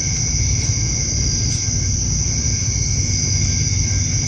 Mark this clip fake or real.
real